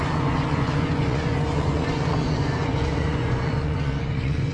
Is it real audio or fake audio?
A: fake